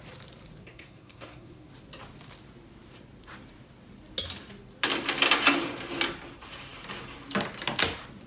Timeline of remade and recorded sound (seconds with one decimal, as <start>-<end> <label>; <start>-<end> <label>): 0.0-0.6 recorded; 0.6-1.7 remade; 1.7-8.3 recorded

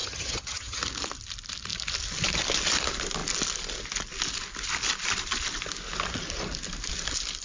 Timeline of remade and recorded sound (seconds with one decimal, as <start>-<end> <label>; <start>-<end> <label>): 0.0-0.8 remade; 0.8-7.4 recorded

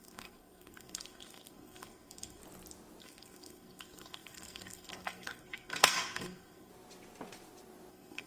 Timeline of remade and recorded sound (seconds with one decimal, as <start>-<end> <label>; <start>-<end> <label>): 0.0-2.4 remade; 2.4-3.0 recorded; 3.0-6.7 remade; 6.7-7.9 recorded; 7.9-8.3 remade

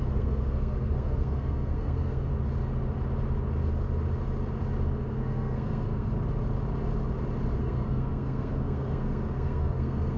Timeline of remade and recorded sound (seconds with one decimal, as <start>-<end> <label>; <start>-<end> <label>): 0.0-2.3 remade; 2.3-5.1 recorded; 5.1-6.1 remade; 6.1-7.6 recorded; 7.6-10.2 remade

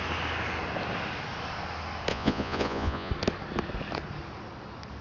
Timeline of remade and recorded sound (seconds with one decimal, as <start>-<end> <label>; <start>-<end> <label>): 0.0-2.1 recorded; 2.1-3.1 remade; 3.1-5.0 recorded

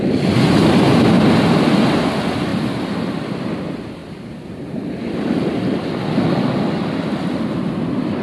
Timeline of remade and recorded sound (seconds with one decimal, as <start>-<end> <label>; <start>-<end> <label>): 0.0-8.2 recorded